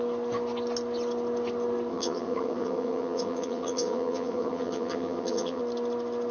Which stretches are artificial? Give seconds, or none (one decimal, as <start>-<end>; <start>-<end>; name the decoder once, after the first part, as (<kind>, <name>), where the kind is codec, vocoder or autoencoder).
1.9-5.6 (vocoder, HiFi-GAN)